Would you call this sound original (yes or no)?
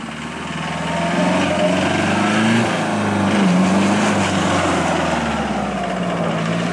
yes